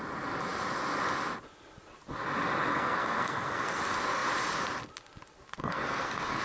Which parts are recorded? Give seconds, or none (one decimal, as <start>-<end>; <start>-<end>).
0.0-2.7; 3.8-5.6